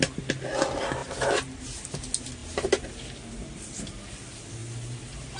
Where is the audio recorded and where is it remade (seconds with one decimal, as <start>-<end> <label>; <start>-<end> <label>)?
0.0-5.4 recorded